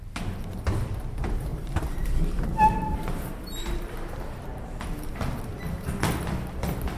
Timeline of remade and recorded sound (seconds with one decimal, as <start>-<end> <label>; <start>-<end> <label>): 0.0-1.5 recorded; 1.5-5.6 remade; 5.6-7.0 recorded